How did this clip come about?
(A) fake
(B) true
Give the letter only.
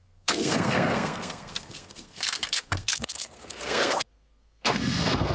A